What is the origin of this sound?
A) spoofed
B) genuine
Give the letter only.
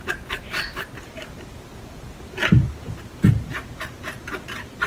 B